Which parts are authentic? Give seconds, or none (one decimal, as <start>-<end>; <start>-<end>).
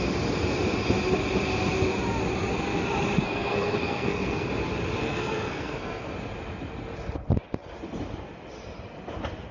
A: 0.0-3.2; 4.5-5.0; 6.1-9.5